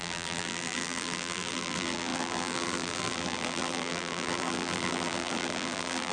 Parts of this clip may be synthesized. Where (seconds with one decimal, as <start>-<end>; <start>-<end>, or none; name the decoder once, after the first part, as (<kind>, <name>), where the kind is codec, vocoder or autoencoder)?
0.0-6.1 (vocoder, BigVGAN v2)